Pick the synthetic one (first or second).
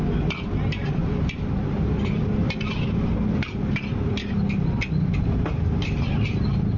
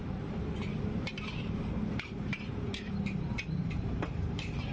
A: second